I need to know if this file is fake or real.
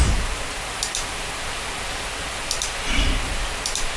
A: real